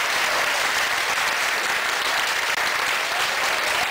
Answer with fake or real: real